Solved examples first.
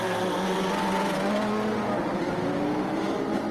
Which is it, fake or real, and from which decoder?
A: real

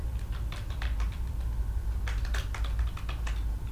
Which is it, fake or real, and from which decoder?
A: real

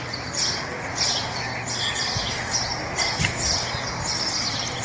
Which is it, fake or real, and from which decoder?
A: fake, vocoder, BigVGAN v2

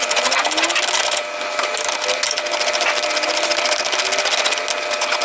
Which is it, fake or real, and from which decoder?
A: real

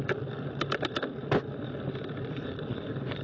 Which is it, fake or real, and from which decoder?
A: fake, vocoder, BigVGAN v2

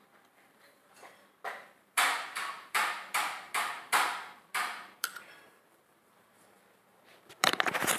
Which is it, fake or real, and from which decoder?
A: fake, vocoder, BigVGAN v2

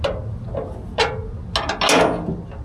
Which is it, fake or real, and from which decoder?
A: real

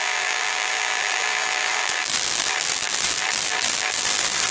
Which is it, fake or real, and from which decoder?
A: fake, vocoder, BigVGAN v2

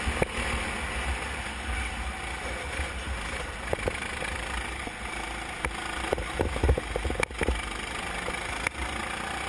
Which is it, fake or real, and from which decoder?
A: real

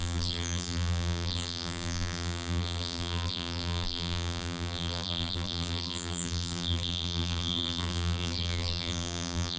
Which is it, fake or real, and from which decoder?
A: fake, vocoder, BigVGAN v2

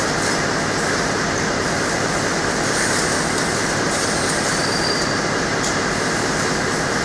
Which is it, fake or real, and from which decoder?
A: fake, vocoder, BigVGAN v2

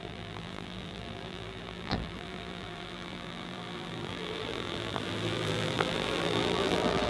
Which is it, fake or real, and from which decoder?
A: fake, vocoder, BigVGAN v2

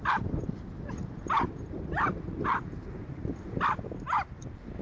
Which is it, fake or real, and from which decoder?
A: real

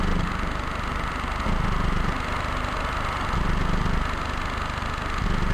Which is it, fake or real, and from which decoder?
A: real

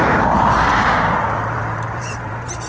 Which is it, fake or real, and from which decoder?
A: fake, vocoder, BigVGAN v2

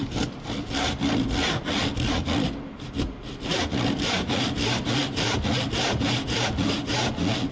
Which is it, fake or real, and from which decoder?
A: fake, vocoder, BigVGAN v2